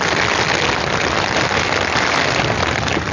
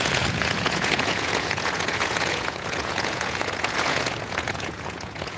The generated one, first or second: second